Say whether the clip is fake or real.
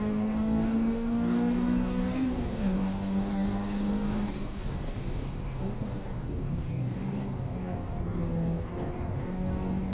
fake